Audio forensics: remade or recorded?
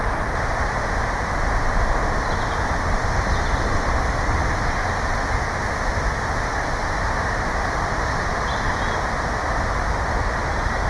recorded